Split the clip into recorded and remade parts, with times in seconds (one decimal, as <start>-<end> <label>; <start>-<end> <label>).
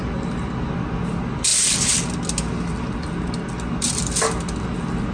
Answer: 0.0-5.1 recorded